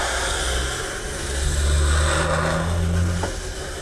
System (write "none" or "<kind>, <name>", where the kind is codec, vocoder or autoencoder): none